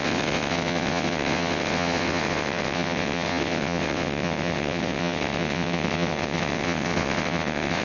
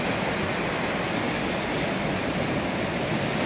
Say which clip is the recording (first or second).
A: second